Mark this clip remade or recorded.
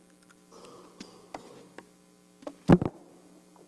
recorded